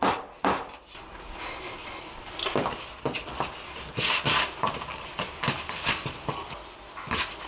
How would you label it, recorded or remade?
recorded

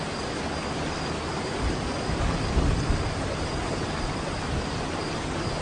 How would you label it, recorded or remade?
recorded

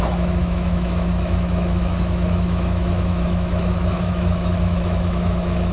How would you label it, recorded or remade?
remade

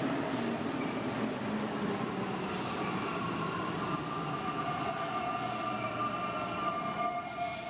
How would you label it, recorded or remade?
recorded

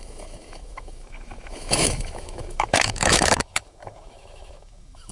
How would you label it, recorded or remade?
remade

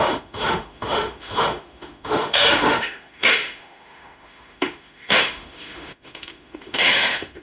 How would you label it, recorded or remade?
remade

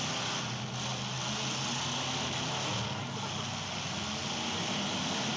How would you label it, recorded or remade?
recorded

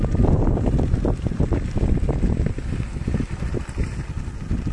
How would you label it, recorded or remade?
recorded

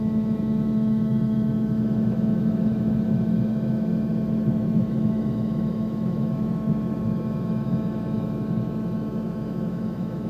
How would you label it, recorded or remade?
remade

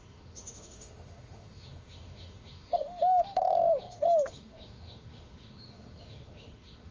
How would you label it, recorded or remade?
remade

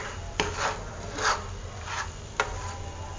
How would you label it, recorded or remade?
recorded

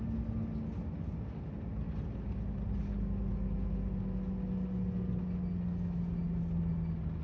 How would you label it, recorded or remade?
recorded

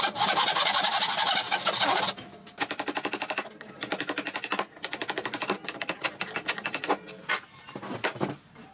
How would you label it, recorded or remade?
recorded